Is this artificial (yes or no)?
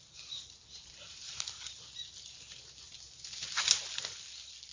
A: no